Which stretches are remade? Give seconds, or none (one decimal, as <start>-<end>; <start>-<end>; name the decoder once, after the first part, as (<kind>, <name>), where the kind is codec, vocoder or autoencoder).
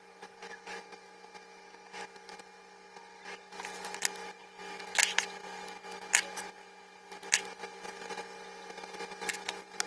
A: none